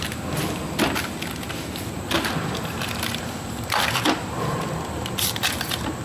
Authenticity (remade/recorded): remade